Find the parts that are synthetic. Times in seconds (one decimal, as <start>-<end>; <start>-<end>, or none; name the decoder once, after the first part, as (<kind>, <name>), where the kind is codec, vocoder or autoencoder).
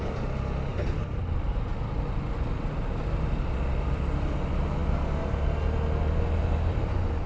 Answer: none